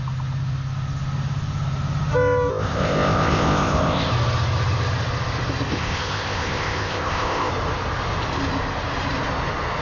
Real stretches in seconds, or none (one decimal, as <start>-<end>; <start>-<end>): 0.0-2.5; 4.1-5.7; 7.5-9.8

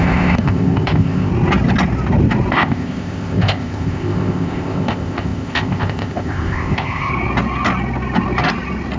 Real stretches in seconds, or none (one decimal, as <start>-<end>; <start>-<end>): 1.3-2.5; 7.1-9.0

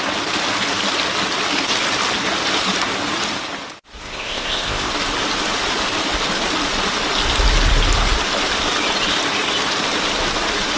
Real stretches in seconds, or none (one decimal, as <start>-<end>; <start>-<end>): 0.0-4.0; 4.9-10.8

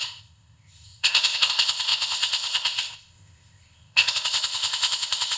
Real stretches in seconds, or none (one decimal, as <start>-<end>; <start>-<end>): none

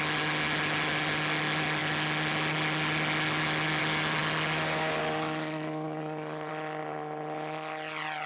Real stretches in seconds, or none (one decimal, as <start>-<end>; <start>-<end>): 0.0-8.3

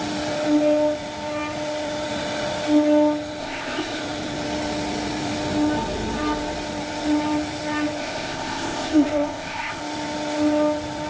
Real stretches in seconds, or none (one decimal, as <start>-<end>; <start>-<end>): 0.0-3.4; 4.0-8.0; 9.8-11.1

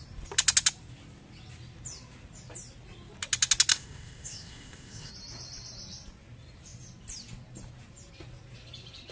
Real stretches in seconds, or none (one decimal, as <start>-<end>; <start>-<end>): 0.0-3.7; 5.1-9.1